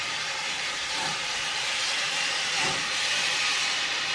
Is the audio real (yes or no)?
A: no